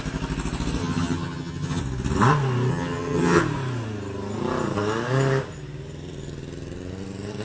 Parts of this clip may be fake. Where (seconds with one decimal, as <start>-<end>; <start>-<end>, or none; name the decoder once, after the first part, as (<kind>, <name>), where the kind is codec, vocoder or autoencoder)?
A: 0.8-1.8 (vocoder, HiFi-GAN); 2.7-3.4